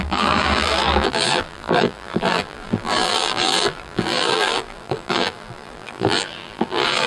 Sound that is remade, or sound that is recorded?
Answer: remade